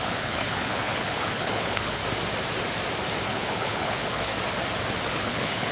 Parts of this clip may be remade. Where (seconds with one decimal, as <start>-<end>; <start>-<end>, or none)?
0.0-2.0; 3.3-4.3; 5.1-5.7